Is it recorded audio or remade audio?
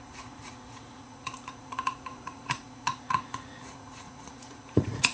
remade